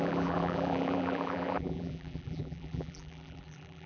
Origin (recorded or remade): remade